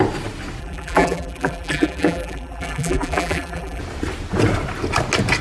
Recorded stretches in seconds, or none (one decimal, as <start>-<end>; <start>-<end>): 0.0-0.6; 3.8-5.4